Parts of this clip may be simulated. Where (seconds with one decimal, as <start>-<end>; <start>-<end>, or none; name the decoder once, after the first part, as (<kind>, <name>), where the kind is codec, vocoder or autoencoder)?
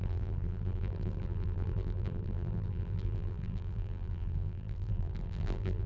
0.0-5.9 (vocoder, BigVGAN v2)